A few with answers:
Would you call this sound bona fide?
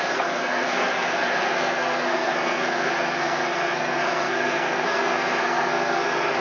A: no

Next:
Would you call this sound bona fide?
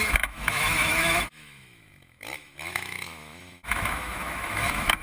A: no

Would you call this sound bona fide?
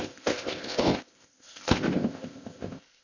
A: no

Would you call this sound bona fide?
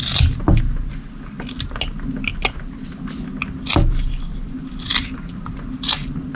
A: yes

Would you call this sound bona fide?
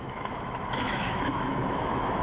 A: no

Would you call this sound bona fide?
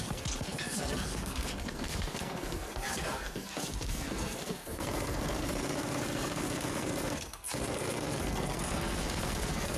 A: no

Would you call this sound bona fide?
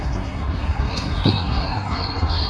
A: no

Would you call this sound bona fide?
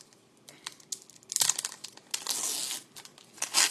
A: yes